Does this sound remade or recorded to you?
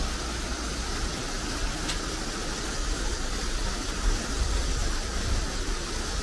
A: recorded